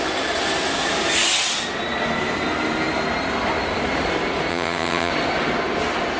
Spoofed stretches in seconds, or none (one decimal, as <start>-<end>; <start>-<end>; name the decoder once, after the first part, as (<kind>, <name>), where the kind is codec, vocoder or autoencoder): 4.5-5.1 (vocoder, HiFi-GAN)